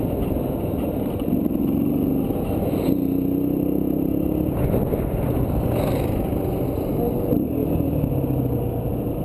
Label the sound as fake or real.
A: real